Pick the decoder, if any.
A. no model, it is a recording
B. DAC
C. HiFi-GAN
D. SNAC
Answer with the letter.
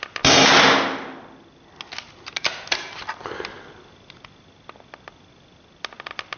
A